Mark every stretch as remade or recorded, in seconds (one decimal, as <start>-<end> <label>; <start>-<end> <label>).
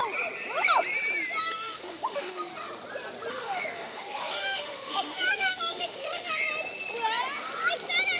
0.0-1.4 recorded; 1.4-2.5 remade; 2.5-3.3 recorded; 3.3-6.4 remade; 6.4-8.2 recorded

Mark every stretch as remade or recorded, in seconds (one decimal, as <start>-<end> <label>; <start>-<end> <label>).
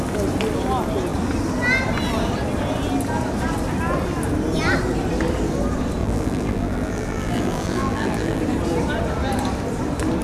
0.0-6.0 recorded; 6.0-8.4 remade; 8.4-10.2 recorded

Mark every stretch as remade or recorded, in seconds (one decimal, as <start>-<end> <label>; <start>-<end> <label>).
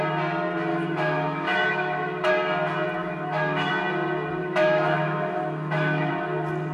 0.0-0.7 recorded; 0.7-2.3 remade; 2.3-3.0 recorded; 3.0-3.7 remade; 3.7-4.4 recorded; 4.4-6.1 remade; 6.1-6.7 recorded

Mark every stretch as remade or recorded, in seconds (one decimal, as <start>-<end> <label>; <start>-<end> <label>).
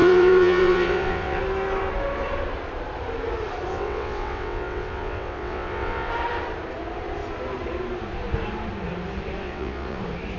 0.0-1.4 remade; 1.4-3.7 recorded; 3.7-6.1 remade; 6.1-9.4 recorded; 9.4-10.0 remade; 10.0-10.4 recorded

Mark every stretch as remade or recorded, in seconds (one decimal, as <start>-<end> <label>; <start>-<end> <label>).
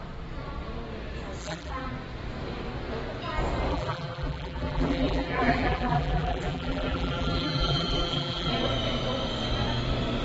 0.0-1.4 recorded; 1.4-1.9 remade; 1.9-3.7 recorded; 3.7-8.5 remade; 8.5-10.2 recorded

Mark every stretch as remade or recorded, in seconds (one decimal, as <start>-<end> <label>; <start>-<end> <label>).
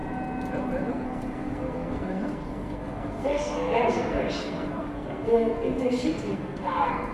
0.0-0.9 recorded; 0.9-7.1 remade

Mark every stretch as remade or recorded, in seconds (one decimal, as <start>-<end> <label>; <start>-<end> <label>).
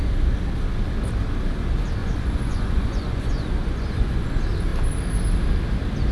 0.0-2.0 recorded; 2.0-4.3 remade; 4.3-6.1 recorded